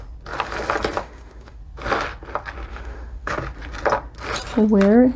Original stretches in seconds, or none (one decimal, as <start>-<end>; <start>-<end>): 0.0-1.0; 1.6-2.7; 3.4-5.2